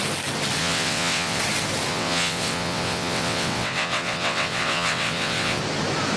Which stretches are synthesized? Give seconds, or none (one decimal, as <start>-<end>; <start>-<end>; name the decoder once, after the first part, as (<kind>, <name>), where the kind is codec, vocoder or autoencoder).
0.6-1.4 (vocoder, WaveNeXt); 1.9-5.6